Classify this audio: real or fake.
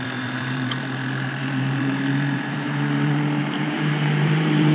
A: fake